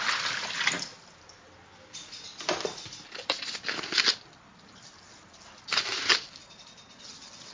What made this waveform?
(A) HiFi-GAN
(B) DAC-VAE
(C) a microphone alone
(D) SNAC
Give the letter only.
C